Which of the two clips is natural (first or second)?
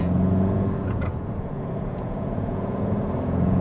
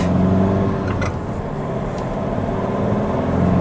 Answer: second